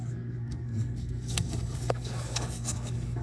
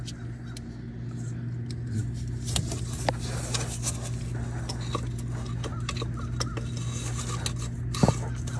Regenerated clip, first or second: first